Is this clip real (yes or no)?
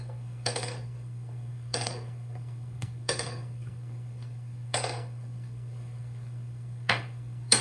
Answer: no